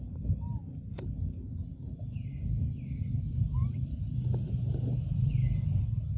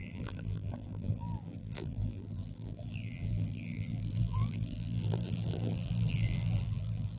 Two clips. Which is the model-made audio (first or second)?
second